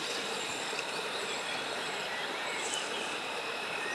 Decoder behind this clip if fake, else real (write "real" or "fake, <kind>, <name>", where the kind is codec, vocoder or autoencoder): fake, vocoder, BigVGAN v2